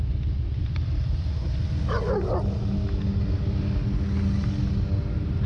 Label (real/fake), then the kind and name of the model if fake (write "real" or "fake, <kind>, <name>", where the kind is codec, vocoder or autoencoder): real